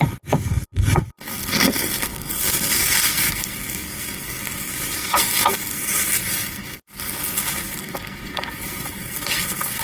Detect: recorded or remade remade